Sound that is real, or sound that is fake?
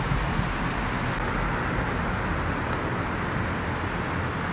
real